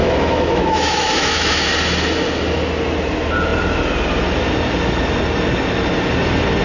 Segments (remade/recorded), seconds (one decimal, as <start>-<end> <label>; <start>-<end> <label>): 0.0-1.7 remade; 1.7-6.6 recorded